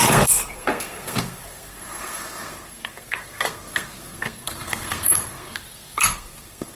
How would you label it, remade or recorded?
remade